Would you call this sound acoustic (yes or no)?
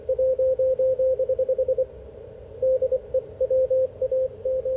yes